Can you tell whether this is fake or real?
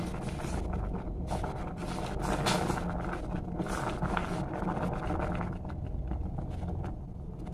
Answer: real